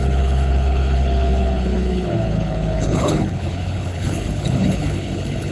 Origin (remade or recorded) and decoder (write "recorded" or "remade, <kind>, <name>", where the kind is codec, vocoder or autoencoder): remade, codec, HILCodec